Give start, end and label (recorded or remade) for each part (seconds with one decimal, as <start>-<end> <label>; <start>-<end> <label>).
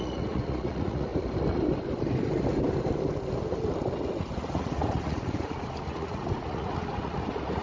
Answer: 0.0-1.1 remade; 1.1-4.2 recorded; 4.2-7.6 remade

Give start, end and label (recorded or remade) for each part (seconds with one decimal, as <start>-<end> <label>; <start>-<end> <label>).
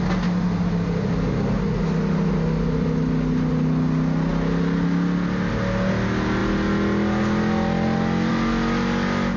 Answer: 0.0-9.4 recorded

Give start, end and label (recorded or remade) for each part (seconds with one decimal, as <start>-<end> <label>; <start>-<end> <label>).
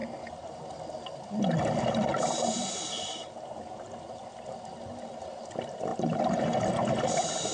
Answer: 0.0-5.9 recorded; 5.9-6.4 remade; 6.4-7.5 recorded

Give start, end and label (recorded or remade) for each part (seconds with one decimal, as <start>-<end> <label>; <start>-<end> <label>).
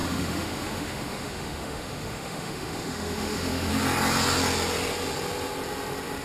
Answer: 0.0-3.7 remade; 3.7-6.2 recorded